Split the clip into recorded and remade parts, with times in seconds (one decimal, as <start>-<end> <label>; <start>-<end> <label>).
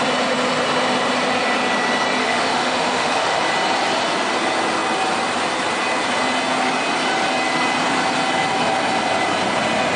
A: 0.0-2.2 recorded; 2.2-3.4 remade; 3.4-10.0 recorded